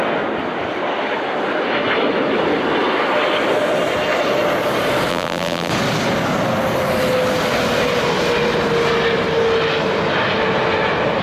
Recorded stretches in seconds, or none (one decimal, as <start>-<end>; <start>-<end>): 0.0-5.1; 5.7-11.2